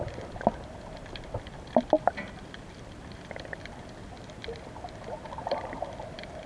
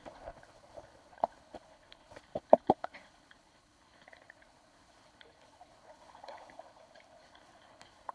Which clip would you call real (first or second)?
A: first